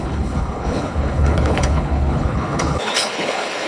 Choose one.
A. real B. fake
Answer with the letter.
B